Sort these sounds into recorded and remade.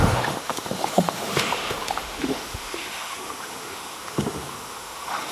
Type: remade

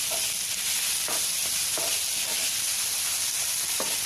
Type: recorded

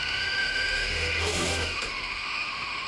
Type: remade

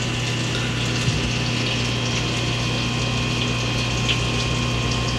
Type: recorded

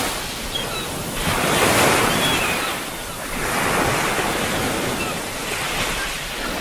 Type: recorded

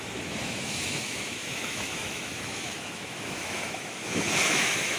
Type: remade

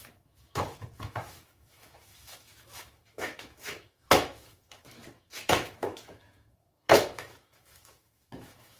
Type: remade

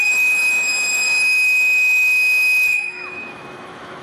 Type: remade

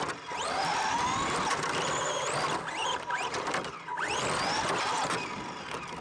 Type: recorded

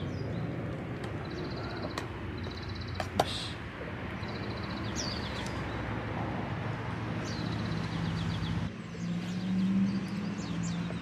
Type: recorded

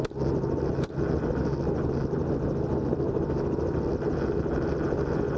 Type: recorded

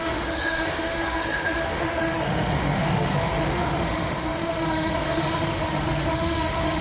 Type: remade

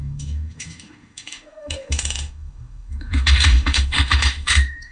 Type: remade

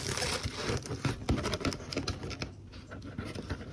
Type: recorded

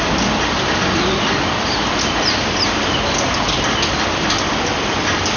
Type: recorded